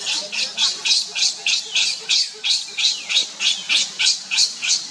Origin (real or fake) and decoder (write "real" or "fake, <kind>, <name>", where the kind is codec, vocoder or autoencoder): real